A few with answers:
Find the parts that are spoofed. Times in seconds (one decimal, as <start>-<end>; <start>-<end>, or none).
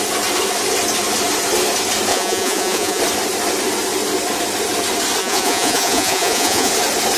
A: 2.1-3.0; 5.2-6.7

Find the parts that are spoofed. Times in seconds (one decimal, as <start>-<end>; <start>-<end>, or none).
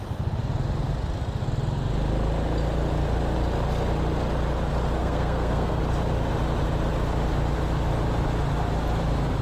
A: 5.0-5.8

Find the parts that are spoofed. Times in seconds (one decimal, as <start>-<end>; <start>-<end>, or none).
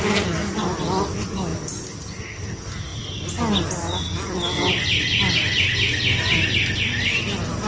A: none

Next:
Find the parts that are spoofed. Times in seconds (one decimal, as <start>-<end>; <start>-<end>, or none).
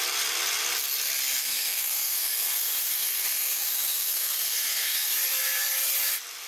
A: 1.4-5.1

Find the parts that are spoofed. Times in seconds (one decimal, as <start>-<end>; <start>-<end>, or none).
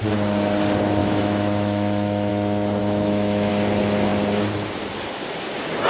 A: 1.0-2.3; 2.8-3.5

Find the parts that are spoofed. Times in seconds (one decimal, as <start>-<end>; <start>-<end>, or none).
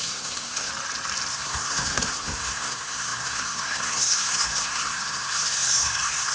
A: 0.0-0.7; 1.3-6.3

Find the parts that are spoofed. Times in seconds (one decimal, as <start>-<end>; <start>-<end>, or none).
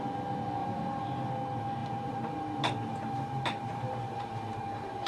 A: 0.6-1.3; 1.8-5.1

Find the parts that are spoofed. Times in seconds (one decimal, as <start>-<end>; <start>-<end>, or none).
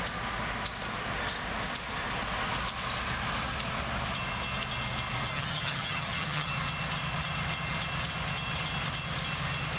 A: 5.3-6.5